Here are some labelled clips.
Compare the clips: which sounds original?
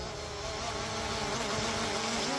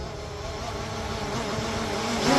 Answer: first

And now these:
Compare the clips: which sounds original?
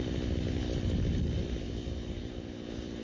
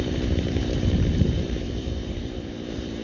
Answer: first